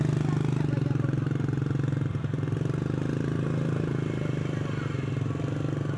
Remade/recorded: recorded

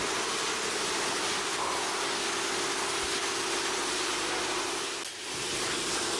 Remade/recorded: recorded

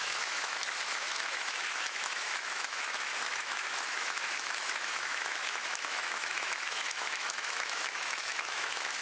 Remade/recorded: remade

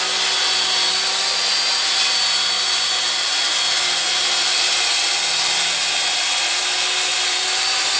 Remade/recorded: recorded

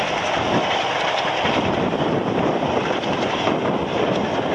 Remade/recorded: recorded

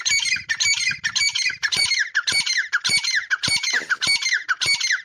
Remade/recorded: remade